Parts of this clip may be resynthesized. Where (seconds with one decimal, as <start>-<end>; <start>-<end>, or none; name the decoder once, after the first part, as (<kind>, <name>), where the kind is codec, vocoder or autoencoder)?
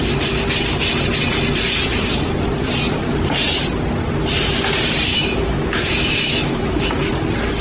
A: 5.1-6.9 (autoencoder, DAC-VAE)